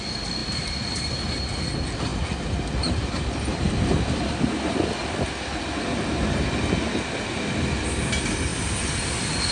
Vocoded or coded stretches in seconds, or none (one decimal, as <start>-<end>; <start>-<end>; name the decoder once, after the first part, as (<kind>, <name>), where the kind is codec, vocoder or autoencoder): none